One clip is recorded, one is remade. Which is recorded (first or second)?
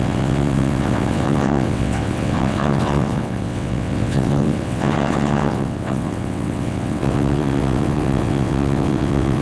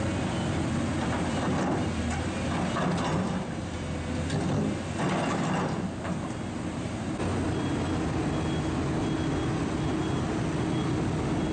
second